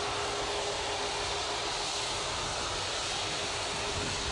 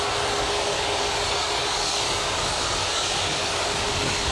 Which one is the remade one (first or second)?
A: second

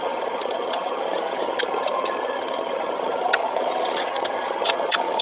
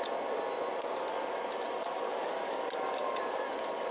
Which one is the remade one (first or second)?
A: first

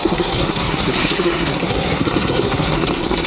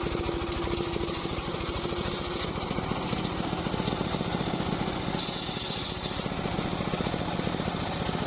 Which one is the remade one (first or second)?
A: first